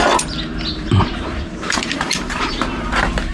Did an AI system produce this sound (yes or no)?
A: yes